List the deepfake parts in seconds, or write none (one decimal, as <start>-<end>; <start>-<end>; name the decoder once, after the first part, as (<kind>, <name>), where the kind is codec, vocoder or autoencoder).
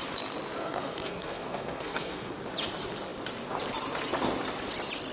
0.6-2.3 (codec, SNAC)